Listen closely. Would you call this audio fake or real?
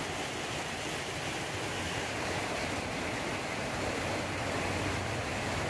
real